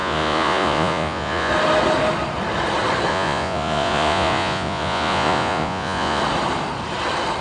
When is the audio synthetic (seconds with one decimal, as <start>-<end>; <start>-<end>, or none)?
0.0-1.5; 3.1-6.2